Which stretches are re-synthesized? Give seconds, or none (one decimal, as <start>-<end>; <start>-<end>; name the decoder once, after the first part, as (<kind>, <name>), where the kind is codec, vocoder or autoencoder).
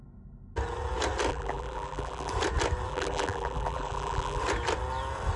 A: 1.3-2.3 (vocoder, BigVGAN v2); 2.9-4.4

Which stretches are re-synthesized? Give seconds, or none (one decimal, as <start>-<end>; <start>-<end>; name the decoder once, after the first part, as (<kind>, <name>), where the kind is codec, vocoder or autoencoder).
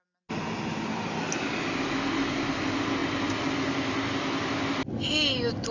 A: none